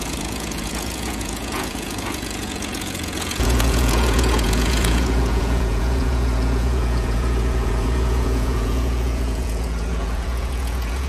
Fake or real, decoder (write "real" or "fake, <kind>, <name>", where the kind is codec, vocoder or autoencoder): fake, vocoder, Vocos